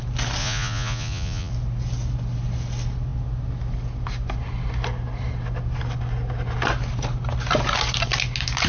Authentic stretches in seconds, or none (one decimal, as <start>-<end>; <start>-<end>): 0.0-0.4; 1.5-8.7